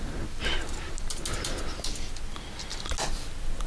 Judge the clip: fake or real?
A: real